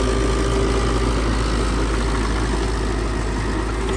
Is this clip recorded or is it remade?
recorded